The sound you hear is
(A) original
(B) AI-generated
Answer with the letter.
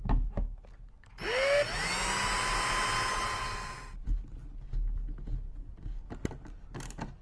A